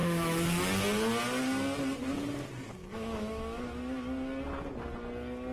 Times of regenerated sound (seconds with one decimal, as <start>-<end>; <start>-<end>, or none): 0.0-0.6; 2.8-3.6